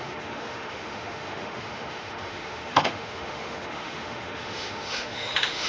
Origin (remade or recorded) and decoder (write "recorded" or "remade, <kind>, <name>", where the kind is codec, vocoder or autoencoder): remade, autoencoder, DAC-VAE